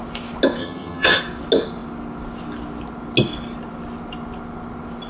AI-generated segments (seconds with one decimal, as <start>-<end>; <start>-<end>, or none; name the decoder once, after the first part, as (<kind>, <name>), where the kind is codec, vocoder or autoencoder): 0.6-1.2 (vocoder, HiFi-GAN)